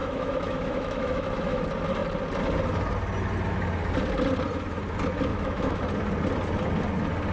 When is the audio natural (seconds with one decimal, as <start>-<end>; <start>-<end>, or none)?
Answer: 1.6-5.3; 5.8-7.3